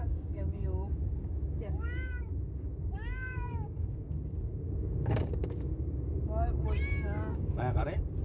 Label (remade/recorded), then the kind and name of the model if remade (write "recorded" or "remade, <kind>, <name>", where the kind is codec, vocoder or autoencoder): remade, codec, DAC